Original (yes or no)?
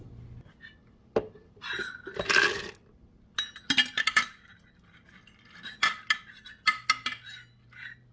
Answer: yes